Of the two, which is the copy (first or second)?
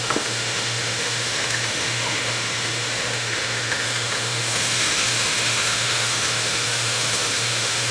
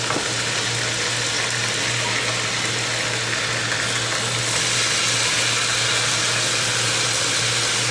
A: first